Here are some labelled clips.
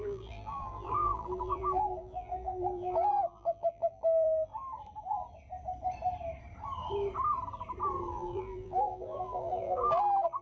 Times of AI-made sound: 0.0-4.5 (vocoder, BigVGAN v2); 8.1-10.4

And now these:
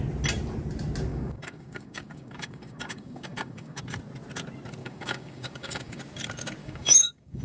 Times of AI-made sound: 1.1-3.8 (codec, DAC); 4.8-6.0; 6.6-7.4

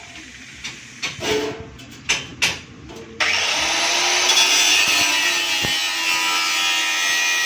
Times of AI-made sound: none

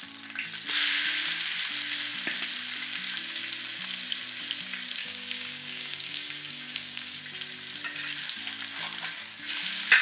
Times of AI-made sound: 5.0-7.2 (codec, DAC)

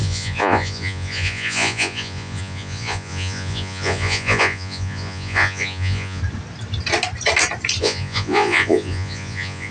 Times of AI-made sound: 0.0-6.2 (vocoder, Vocos); 7.8-9.7

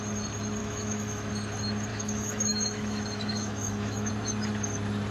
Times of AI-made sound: 0.6-1.3 (autoencoder, DAC-VAE); 1.9-4.1

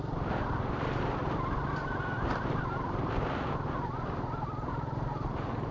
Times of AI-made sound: 0.0-1.2 (vocoder, BigVGAN v2); 2.6-5.7